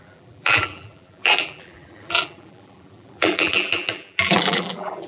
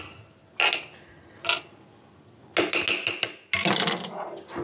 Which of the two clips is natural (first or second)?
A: second